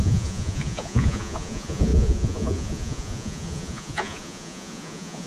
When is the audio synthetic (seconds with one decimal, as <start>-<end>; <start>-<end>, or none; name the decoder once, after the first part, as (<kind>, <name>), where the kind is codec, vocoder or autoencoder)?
0.0-5.3 (vocoder, Vocos)